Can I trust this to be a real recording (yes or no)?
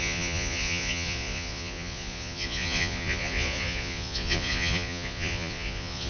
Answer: no